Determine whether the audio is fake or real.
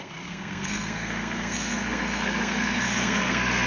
fake